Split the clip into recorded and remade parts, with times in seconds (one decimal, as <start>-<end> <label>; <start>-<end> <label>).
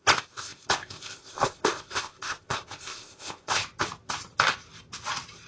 0.0-3.6 remade; 3.6-5.5 recorded